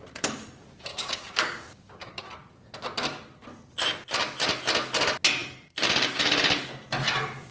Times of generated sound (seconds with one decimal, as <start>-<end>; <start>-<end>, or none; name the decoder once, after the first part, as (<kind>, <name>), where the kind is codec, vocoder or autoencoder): 0.9-2.2 (codec, DAC)